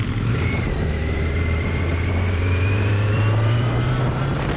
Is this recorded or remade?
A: remade